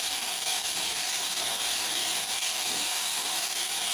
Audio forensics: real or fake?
fake